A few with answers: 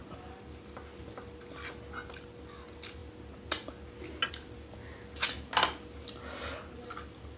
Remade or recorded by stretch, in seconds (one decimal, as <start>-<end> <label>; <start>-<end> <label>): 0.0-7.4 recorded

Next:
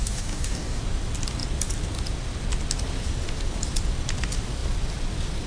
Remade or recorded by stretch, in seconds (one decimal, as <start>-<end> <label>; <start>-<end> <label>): 0.0-0.8 remade; 0.8-5.5 recorded

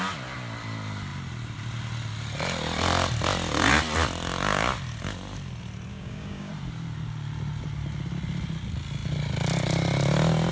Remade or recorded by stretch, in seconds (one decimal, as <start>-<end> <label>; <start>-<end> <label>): 0.0-5.9 recorded; 5.9-6.5 remade; 6.5-10.5 recorded